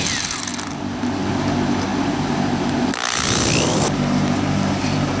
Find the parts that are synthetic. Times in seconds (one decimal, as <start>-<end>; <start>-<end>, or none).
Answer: none